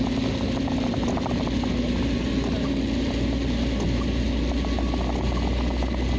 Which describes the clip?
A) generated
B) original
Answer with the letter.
B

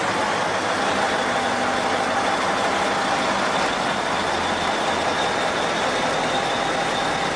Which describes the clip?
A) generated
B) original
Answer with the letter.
B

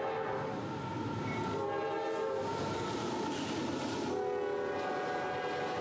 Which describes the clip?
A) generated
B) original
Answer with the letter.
B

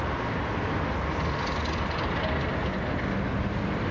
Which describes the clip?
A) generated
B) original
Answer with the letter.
B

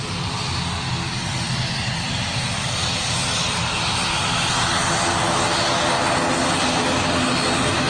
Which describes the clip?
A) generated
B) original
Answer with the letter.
B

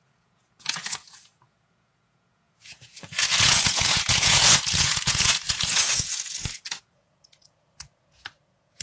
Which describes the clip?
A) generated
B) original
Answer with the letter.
A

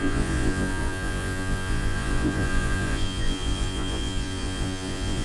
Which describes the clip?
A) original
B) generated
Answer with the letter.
B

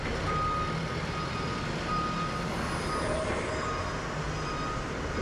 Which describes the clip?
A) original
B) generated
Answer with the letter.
A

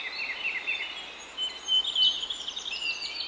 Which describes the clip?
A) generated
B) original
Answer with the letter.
B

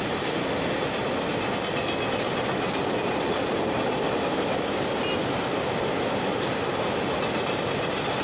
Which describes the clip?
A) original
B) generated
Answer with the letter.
A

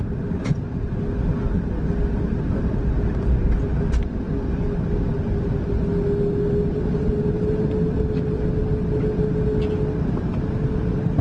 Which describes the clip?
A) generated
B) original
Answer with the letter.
B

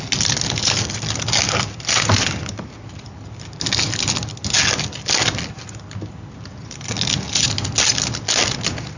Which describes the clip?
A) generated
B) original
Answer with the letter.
B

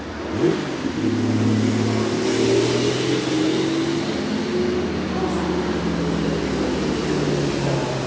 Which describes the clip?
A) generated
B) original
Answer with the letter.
B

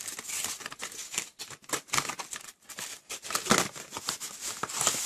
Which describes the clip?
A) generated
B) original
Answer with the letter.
B